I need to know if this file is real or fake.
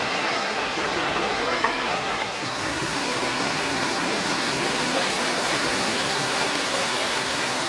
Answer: fake